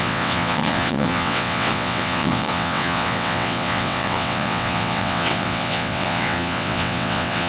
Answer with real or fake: fake